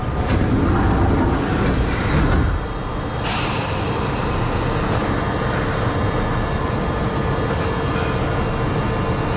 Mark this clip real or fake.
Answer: real